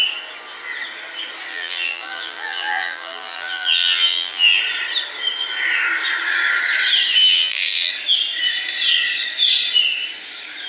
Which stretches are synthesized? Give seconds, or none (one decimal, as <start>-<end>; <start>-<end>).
1.5-4.6; 7.2-7.9